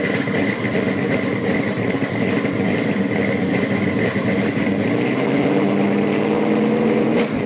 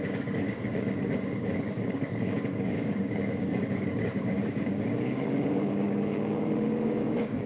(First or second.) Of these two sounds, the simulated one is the second